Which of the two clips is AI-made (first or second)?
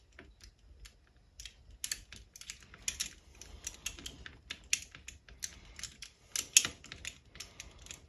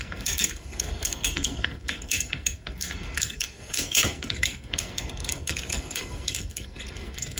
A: second